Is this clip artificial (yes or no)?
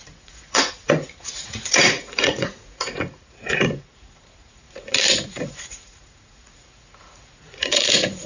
yes